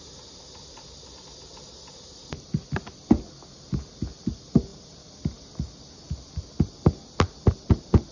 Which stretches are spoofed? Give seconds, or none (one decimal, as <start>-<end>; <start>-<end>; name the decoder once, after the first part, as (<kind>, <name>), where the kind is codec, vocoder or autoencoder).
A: none